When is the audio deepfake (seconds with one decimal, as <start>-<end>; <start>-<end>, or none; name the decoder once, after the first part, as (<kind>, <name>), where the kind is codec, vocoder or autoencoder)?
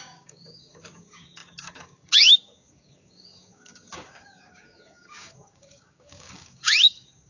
0.0-7.3 (codec, DAC)